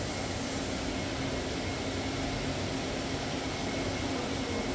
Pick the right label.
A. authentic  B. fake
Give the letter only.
A